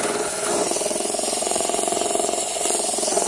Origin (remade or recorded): remade